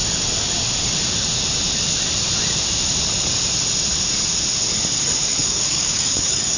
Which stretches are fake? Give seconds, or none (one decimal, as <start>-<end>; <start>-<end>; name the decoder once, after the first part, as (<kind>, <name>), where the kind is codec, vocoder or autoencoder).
5.4-6.6 (codec, DAC)